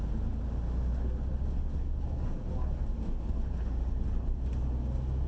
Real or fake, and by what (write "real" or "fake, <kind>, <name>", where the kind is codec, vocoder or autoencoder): real